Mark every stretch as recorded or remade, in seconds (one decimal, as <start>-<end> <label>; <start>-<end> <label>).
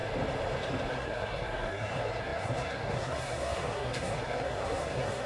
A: 0.0-0.9 recorded; 0.9-5.3 remade